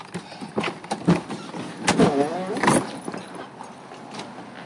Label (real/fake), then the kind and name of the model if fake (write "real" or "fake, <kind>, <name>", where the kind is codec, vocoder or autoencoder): real